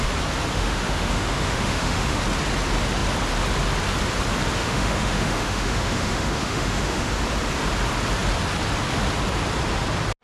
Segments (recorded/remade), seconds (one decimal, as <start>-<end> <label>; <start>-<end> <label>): 0.0-0.5 recorded; 0.5-2.2 remade; 2.2-4.6 recorded; 4.6-7.1 remade; 7.1-10.2 recorded